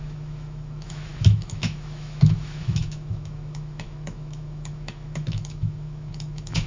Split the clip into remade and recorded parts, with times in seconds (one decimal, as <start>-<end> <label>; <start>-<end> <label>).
0.0-6.7 remade